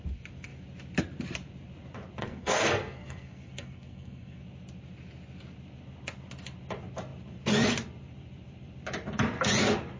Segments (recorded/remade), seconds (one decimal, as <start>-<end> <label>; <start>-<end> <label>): 0.0-2.2 recorded; 2.2-4.4 remade; 4.4-10.0 recorded